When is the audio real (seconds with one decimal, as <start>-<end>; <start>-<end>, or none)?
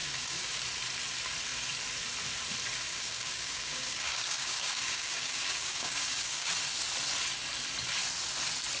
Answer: 0.6-2.9; 6.5-8.8